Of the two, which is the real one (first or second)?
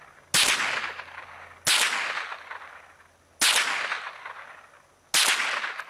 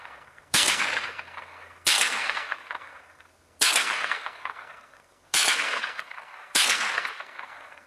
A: first